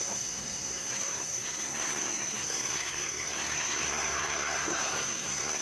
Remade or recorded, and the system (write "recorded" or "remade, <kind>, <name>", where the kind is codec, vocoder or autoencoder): remade, codec, SNAC